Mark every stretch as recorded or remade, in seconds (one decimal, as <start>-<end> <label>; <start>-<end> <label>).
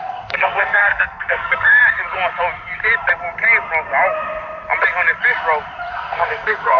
0.0-1.8 remade; 1.8-5.9 recorded; 5.9-6.8 remade